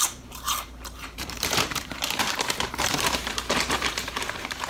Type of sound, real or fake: fake